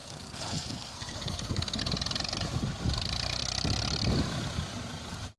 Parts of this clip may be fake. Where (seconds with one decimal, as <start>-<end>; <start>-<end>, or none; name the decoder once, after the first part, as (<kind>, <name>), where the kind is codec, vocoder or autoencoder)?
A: 0.0-1.8 (codec, SNAC)